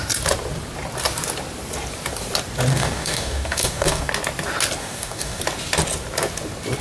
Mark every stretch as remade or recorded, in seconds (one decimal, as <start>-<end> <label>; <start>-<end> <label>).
0.0-2.7 recorded; 2.7-4.1 remade; 4.1-4.8 recorded; 4.8-5.4 remade; 5.4-6.8 recorded